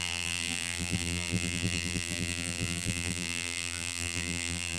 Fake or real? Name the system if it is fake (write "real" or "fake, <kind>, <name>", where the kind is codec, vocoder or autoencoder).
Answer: fake, vocoder, BigVGAN v2